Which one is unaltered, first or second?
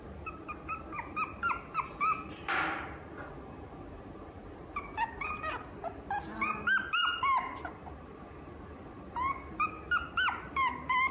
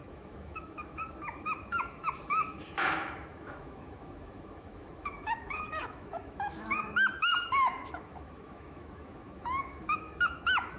first